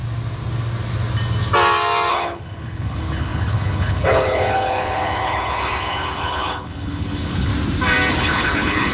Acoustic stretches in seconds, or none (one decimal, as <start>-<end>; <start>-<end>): 0.0-2.1; 7.5-8.1